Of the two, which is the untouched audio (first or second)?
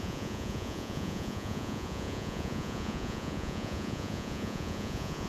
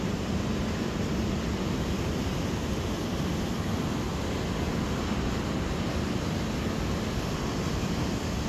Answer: second